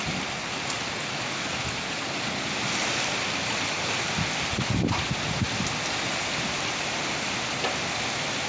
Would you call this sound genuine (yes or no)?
yes